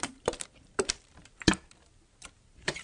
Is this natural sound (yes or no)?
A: no